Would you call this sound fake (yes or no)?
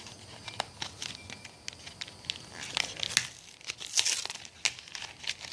no